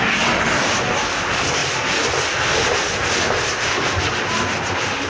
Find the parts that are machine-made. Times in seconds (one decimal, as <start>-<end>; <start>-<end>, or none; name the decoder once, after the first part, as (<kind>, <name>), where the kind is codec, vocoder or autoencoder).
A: none